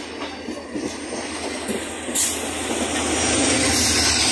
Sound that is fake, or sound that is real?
real